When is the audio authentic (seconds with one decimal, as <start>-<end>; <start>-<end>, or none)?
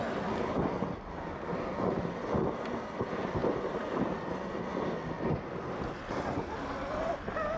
0.0-7.6